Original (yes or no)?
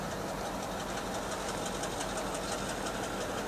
yes